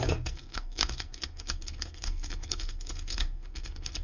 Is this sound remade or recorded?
remade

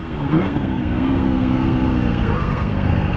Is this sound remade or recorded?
remade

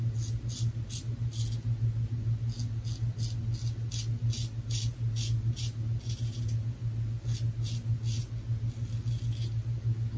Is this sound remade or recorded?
recorded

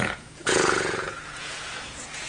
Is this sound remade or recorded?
remade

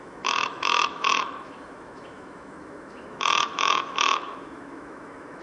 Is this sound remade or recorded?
remade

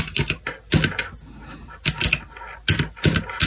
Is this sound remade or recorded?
recorded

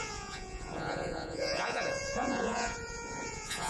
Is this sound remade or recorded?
remade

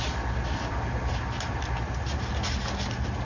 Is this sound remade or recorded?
recorded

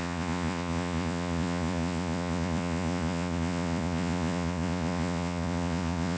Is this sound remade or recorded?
remade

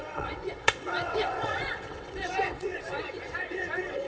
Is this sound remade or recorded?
remade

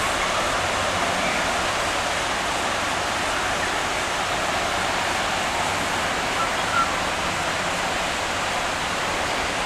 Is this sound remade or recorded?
recorded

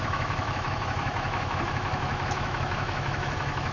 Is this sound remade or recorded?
remade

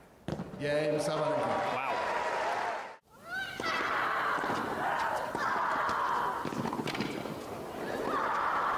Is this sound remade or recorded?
recorded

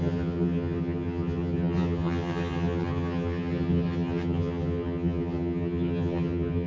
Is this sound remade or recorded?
remade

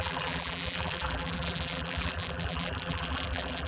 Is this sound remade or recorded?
remade